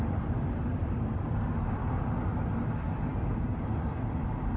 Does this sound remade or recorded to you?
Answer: recorded